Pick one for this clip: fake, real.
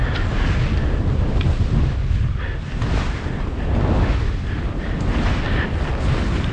real